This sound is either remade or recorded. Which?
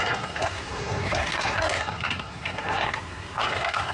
remade